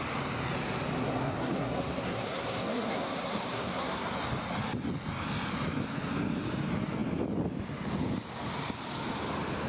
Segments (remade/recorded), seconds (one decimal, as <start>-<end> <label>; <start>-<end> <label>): 0.0-1.0 recorded; 1.0-4.1 remade; 4.1-9.7 recorded